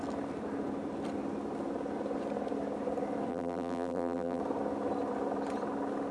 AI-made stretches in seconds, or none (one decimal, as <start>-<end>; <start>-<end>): 3.3-4.4